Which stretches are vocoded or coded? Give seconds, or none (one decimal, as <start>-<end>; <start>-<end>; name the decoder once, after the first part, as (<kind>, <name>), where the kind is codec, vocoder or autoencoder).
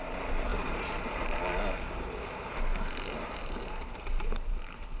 0.5-1.6 (vocoder, BigVGAN v2); 2.7-5.0